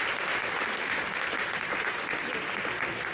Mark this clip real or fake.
real